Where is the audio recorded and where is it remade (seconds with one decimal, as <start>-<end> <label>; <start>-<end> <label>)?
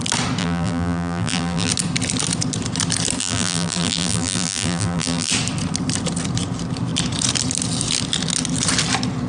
0.0-0.4 recorded; 0.4-1.7 remade; 1.7-3.2 recorded; 3.2-5.3 remade; 5.3-9.3 recorded